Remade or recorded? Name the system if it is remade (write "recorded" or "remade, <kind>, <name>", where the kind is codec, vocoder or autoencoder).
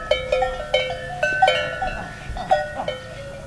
recorded